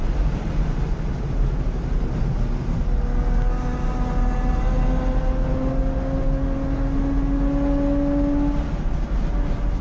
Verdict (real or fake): real